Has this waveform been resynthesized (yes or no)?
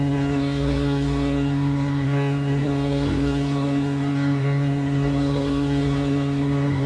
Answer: yes